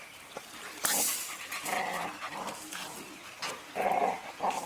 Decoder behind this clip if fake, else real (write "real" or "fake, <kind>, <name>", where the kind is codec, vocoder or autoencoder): fake, vocoder, BigVGAN v2